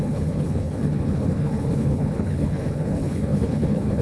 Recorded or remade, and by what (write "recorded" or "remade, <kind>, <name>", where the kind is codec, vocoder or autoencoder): remade, codec, HILCodec